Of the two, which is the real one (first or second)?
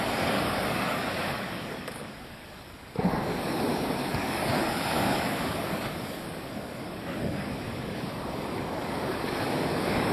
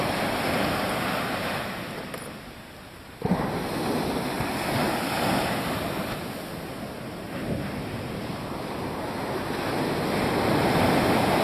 second